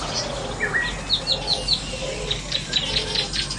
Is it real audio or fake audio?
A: real